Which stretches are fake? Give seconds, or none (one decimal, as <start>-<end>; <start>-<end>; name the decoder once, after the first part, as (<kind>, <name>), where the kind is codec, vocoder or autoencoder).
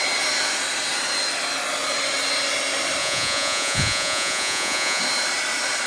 3.0-5.0 (vocoder, Vocos)